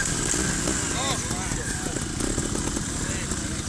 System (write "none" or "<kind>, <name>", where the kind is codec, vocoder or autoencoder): none